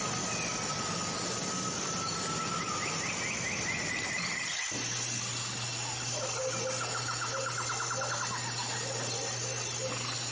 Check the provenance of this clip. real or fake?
real